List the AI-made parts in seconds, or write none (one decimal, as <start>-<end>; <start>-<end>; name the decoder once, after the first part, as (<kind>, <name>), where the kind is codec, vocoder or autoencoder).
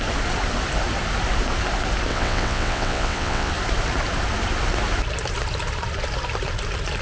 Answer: 2.1-3.5 (vocoder, WaveNeXt)